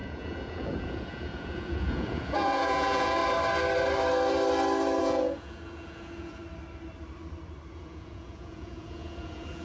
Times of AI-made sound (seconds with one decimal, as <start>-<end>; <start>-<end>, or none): 0.0-3.2; 5.0-6.4; 7.7-9.6

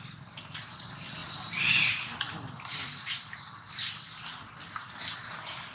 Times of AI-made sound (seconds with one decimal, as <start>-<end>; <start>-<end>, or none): none

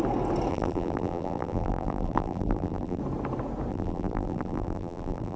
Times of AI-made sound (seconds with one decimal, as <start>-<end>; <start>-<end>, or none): 0.5-3.0; 3.7-5.4

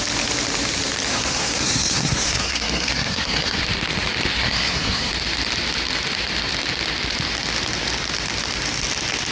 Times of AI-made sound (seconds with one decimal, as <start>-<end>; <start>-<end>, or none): 1.1-3.6; 4.3-5.1

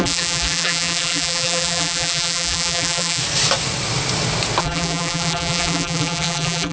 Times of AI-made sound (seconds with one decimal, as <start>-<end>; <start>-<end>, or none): 0.0-3.2; 4.6-6.7